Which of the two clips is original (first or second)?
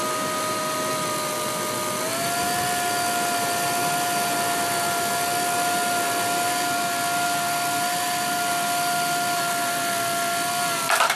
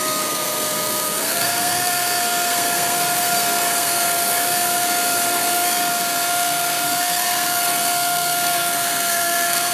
first